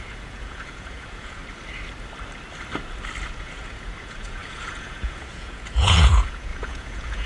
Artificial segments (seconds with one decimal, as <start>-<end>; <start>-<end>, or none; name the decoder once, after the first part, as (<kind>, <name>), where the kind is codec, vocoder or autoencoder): 0.0-1.4 (vocoder, Vocos); 3.3-7.3